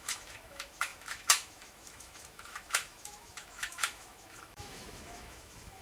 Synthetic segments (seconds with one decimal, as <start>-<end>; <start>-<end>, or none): 0.0-5.8